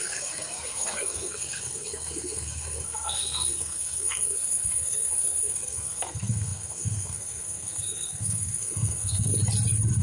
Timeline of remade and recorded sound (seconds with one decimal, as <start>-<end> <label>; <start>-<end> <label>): 0.0-9.3 remade; 9.3-10.0 recorded